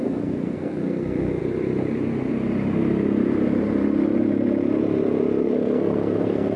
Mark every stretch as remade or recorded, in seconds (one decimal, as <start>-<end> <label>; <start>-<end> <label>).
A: 0.0-1.4 remade; 1.4-5.4 recorded; 5.4-6.6 remade

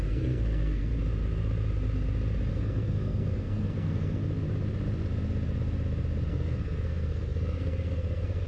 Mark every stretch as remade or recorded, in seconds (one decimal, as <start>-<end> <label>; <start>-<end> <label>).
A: 0.0-0.9 remade; 0.9-2.5 recorded; 2.5-4.2 remade; 4.2-6.3 recorded; 6.3-8.5 remade

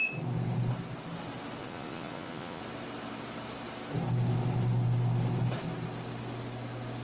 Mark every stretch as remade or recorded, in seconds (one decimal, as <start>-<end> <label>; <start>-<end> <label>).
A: 0.0-1.6 recorded; 1.6-2.6 remade; 2.6-7.0 recorded

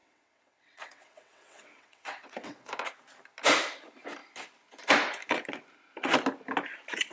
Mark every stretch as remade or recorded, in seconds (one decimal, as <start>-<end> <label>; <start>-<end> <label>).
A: 0.0-2.7 remade; 2.7-7.1 recorded

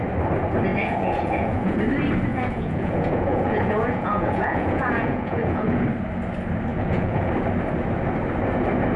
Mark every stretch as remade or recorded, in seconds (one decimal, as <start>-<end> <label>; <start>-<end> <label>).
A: 0.0-0.7 recorded; 0.7-1.8 remade; 1.8-2.3 recorded; 2.3-5.8 remade; 5.8-6.7 recorded; 6.7-7.3 remade; 7.3-9.0 recorded

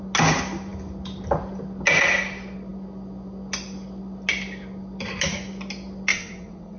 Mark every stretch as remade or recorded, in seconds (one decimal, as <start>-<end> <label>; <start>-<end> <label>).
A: 0.0-6.1 recorded; 6.1-6.8 remade